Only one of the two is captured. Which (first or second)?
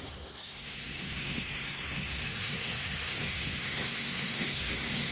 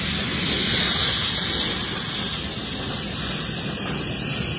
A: second